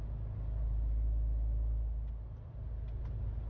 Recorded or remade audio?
recorded